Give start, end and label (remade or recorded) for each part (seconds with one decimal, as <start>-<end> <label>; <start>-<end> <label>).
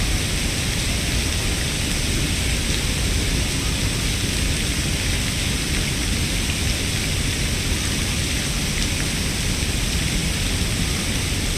0.0-10.2 recorded; 10.2-11.1 remade; 11.1-11.6 recorded